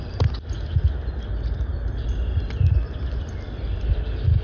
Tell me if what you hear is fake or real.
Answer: real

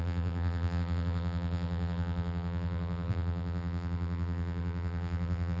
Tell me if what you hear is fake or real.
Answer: fake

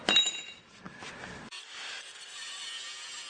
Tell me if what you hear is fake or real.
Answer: real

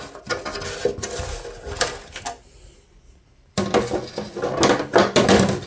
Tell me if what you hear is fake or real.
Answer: real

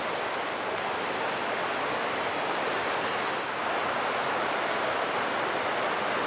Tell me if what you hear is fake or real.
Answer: real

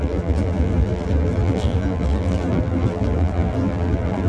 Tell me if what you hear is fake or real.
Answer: fake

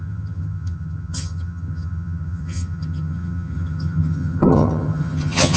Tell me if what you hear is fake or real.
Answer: fake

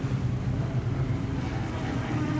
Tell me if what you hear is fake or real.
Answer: real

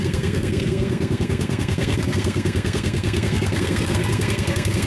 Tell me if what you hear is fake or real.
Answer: fake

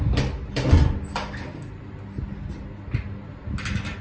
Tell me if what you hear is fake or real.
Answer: real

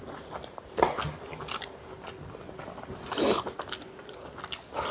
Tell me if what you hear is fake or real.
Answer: real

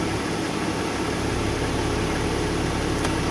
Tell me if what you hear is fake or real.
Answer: real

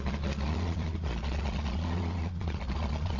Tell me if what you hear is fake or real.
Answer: fake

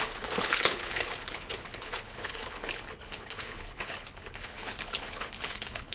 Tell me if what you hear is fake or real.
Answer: fake